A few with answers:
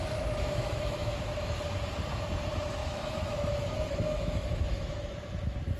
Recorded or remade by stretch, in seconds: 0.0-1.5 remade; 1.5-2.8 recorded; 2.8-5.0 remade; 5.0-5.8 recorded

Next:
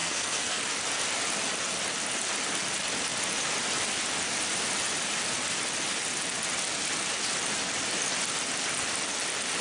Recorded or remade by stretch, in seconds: 0.0-0.6 remade; 0.6-9.6 recorded